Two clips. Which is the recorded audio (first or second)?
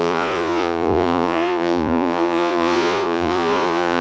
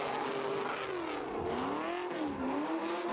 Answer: second